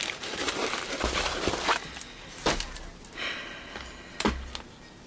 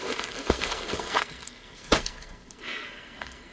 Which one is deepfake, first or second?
second